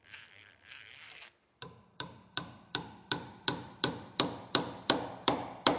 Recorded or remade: remade